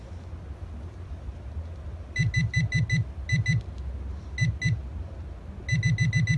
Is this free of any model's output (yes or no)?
yes